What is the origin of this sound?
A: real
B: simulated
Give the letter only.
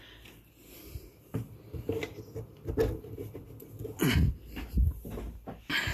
A